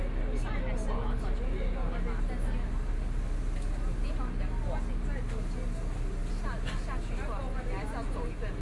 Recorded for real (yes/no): yes